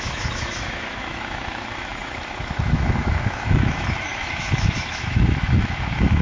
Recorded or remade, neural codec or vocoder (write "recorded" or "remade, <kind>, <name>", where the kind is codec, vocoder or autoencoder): remade, autoencoder, DAC-VAE